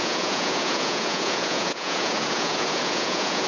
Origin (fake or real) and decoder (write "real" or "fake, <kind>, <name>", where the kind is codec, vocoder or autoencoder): fake, vocoder, Vocos